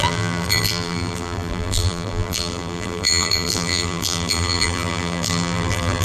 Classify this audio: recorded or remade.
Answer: remade